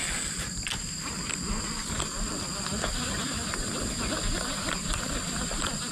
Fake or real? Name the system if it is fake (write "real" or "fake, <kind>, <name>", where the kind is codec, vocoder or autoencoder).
real